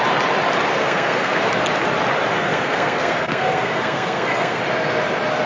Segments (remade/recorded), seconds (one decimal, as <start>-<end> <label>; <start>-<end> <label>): 0.0-0.8 recorded; 0.8-1.5 remade; 1.5-2.3 recorded; 2.3-4.6 remade; 4.6-5.5 recorded